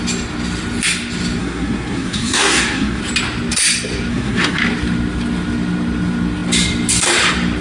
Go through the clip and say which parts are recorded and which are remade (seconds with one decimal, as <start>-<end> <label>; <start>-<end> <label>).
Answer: 0.0-1.4 recorded; 1.4-3.0 remade; 3.0-4.1 recorded; 4.1-4.6 remade; 4.6-7.6 recorded